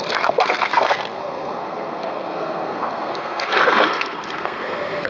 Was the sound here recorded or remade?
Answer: remade